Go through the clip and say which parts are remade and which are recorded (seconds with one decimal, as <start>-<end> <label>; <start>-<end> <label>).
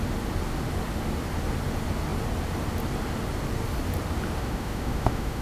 0.0-4.4 recorded; 4.4-5.4 remade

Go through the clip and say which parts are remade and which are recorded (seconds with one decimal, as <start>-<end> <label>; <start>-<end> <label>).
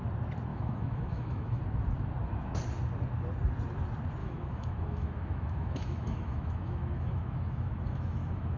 0.0-0.5 recorded; 0.5-1.6 remade; 1.6-4.2 recorded; 4.2-8.6 remade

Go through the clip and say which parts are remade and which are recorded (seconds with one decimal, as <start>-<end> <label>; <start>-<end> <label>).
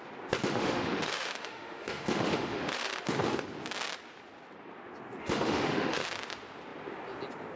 0.0-0.4 recorded; 0.4-3.1 remade; 3.1-5.2 recorded; 5.2-6.0 remade; 6.0-7.6 recorded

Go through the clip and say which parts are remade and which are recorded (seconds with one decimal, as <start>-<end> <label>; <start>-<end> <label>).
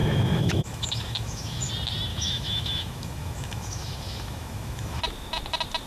0.0-1.7 remade; 1.7-2.1 recorded; 2.1-5.0 remade; 5.0-5.9 recorded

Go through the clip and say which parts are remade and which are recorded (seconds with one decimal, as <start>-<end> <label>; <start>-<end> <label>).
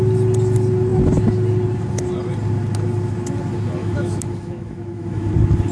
0.0-3.8 recorded; 3.8-5.3 remade; 5.3-5.7 recorded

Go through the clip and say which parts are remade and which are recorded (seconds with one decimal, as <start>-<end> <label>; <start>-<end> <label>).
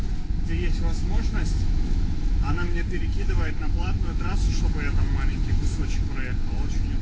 0.0-1.0 recorded; 1.0-4.6 remade; 4.6-5.4 recorded; 5.4-6.1 remade; 6.1-7.0 recorded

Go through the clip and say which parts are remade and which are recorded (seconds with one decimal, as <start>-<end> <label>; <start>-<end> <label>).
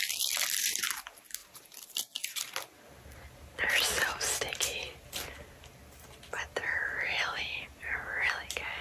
0.0-8.8 recorded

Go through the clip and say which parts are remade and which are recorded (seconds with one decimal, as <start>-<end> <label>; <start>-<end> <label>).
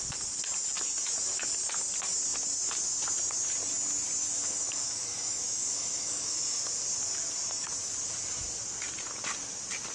0.0-4.2 recorded; 4.2-6.6 remade; 6.6-9.9 recorded